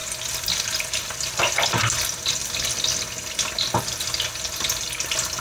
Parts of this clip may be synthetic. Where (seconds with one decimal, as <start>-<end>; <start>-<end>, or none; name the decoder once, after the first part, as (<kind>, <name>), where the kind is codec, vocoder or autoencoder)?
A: none